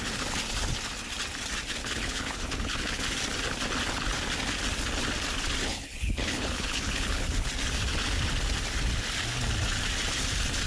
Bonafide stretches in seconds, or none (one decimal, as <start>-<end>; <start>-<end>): 0.0-1.8; 3.0-5.7; 7.5-10.7